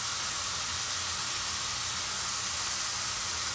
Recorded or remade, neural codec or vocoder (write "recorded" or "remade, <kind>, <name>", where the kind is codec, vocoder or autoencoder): recorded